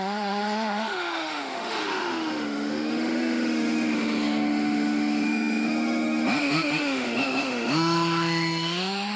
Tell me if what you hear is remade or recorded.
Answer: remade